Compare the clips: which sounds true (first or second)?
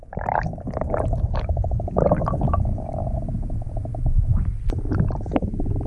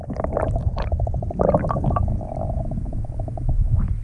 first